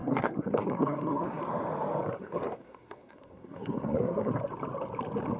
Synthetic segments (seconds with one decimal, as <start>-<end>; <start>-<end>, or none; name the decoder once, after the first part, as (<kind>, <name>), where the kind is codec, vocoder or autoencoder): 0.0-1.4 (codec, SNAC); 2.2-4.3